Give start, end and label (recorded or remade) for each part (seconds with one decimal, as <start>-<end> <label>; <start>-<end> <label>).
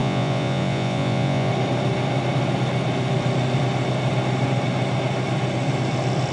0.0-1.5 remade; 1.5-6.3 recorded